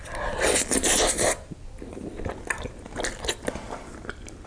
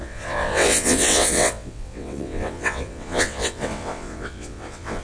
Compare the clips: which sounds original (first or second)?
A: first